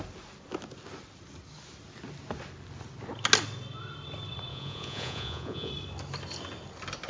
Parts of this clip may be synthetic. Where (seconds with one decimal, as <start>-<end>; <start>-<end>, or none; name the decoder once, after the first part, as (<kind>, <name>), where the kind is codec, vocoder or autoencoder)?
4.5-5.7 (vocoder, Vocos)